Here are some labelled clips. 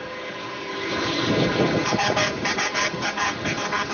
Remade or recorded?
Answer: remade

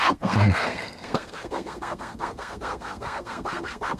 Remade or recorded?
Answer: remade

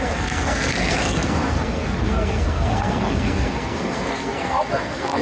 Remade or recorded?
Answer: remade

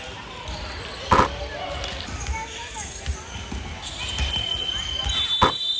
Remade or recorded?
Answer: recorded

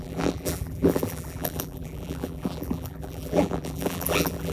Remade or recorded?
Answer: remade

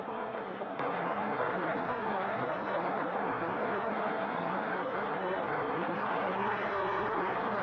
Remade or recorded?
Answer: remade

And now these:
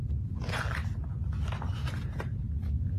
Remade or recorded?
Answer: recorded